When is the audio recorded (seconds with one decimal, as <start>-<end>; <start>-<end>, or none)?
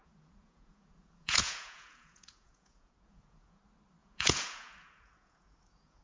3.6-4.0